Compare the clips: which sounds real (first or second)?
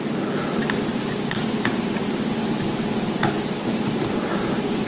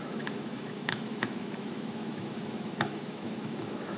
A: first